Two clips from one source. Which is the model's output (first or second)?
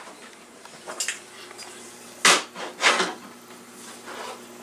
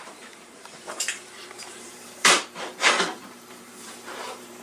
second